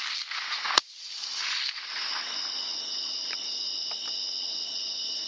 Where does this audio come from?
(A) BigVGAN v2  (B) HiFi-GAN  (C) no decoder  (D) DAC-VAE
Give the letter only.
C